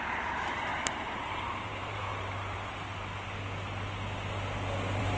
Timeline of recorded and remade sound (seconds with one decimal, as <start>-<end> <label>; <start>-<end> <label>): 0.0-0.7 remade; 0.7-1.3 recorded; 1.3-2.1 remade; 2.1-5.2 recorded